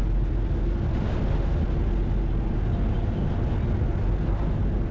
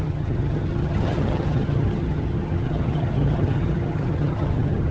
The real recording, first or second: first